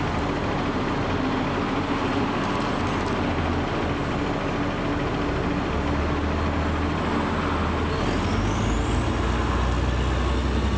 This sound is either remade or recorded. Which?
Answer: recorded